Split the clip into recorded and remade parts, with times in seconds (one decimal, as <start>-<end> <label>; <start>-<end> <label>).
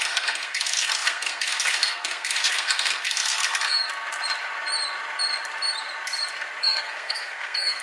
0.0-3.8 remade; 3.8-6.6 recorded; 6.6-7.8 remade